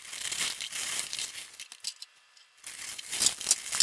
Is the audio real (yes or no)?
yes